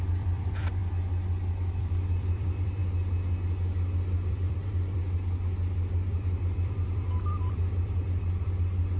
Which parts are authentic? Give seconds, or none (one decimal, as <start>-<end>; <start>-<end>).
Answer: 0.8-1.8; 2.8-4.3; 5.0-5.9